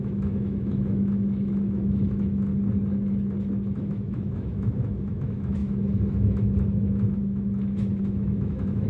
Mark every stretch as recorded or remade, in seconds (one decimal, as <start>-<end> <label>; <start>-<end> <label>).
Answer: 0.0-2.5 remade; 2.5-3.8 recorded; 3.8-8.9 remade